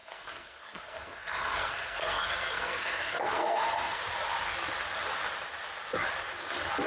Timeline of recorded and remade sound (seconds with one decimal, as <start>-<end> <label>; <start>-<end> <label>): 0.0-4.0 remade; 4.0-6.9 recorded

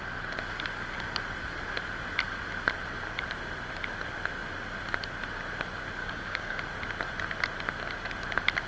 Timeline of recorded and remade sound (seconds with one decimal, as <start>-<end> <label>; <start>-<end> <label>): 0.0-6.0 recorded; 6.0-6.6 remade; 6.6-8.7 recorded

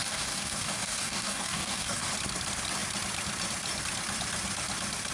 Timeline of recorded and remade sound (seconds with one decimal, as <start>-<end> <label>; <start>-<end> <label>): 0.0-2.1 remade; 2.1-5.1 recorded

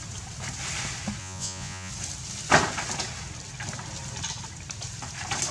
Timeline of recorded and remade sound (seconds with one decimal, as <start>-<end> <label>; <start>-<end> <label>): 0.0-1.2 recorded; 1.2-1.9 remade; 1.9-5.5 recorded

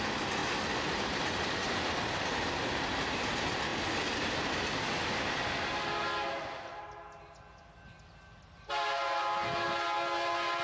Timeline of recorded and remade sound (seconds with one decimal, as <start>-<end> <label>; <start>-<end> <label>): 0.0-10.6 recorded